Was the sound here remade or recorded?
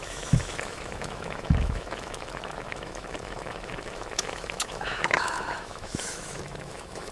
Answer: remade